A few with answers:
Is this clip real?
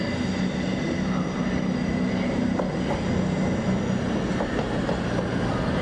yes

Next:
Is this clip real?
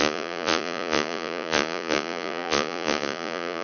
no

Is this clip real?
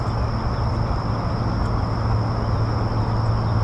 yes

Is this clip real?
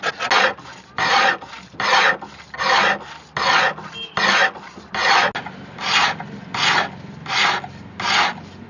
yes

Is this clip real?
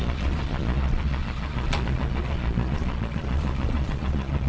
no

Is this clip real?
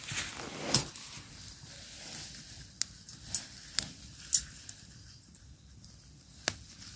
yes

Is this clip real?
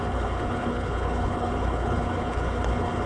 no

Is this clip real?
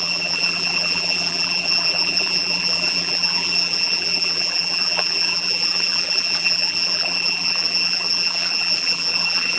no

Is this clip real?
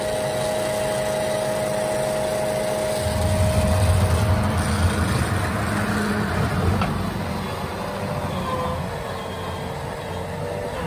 yes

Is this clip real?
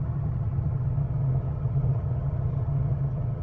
no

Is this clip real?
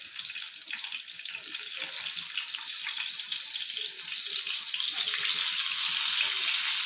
yes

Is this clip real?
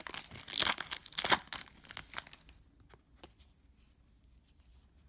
yes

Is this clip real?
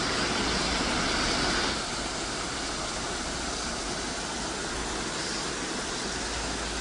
yes